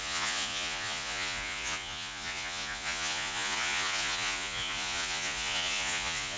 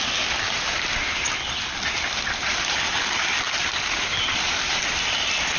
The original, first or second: second